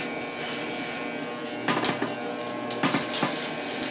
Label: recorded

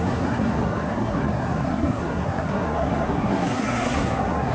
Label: remade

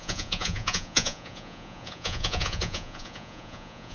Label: remade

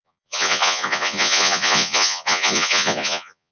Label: remade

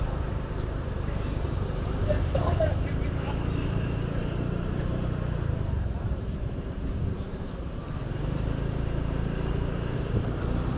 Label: remade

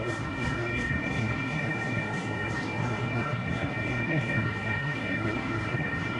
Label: remade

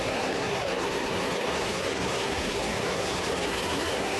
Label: remade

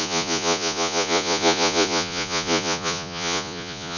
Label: remade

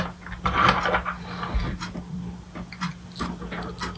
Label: recorded